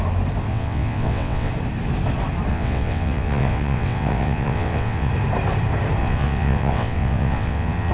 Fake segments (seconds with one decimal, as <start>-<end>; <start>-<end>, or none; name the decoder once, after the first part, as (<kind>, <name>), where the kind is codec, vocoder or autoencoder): 0.5-1.5 (vocoder, WaveNeXt); 2.5-5.1; 6.0-7.9